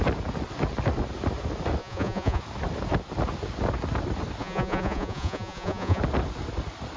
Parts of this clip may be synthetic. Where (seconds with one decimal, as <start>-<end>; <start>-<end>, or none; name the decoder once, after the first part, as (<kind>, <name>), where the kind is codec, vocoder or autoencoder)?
1.8-2.4 (vocoder, Vocos); 4.4-6.0